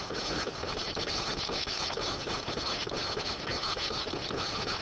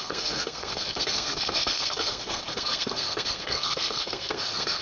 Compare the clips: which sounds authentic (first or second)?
first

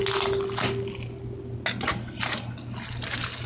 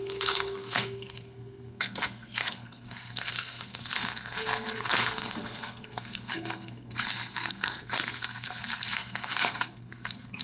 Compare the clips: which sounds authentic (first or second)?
first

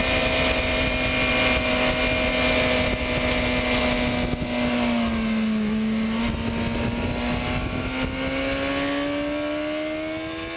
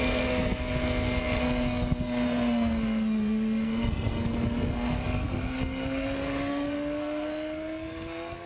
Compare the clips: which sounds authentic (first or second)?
first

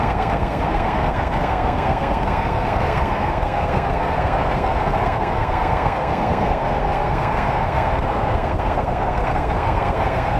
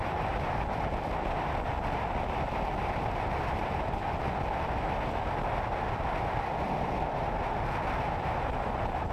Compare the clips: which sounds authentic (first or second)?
second